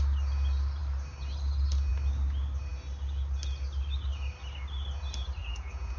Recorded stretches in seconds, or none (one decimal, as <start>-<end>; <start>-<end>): 0.0-5.4